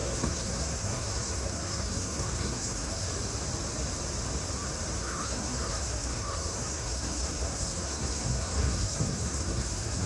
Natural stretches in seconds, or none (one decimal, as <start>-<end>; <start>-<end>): 3.1-5.0